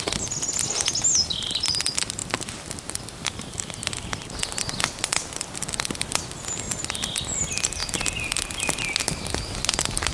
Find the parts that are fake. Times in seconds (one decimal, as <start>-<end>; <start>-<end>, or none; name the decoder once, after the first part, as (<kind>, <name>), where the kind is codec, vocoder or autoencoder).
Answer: none